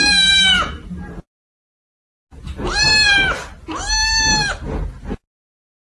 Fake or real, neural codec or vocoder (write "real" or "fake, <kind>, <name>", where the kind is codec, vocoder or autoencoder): real